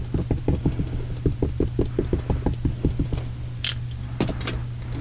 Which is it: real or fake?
real